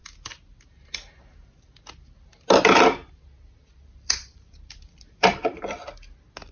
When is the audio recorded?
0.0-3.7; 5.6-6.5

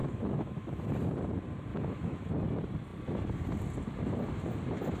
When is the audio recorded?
0.8-1.7; 2.3-5.0

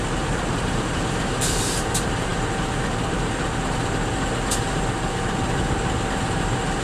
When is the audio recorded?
none